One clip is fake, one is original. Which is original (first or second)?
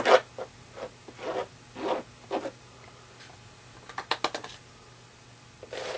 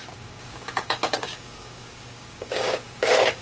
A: first